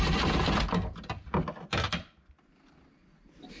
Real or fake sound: real